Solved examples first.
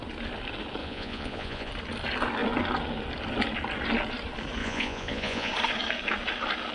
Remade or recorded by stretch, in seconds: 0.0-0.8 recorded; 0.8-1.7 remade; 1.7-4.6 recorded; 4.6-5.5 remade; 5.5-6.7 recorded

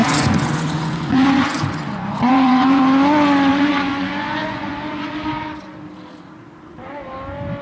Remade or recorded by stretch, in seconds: 0.0-2.8 remade; 2.8-3.5 recorded; 3.5-5.1 remade; 5.1-7.6 recorded

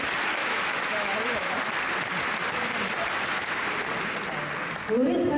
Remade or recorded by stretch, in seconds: 0.0-0.4 recorded; 0.4-1.6 remade; 1.6-5.4 recorded